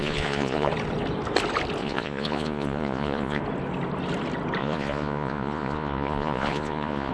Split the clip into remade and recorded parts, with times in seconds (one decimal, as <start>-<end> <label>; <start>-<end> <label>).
0.0-0.7 remade; 0.7-1.8 recorded; 1.8-3.4 remade; 3.4-4.6 recorded; 4.6-7.1 remade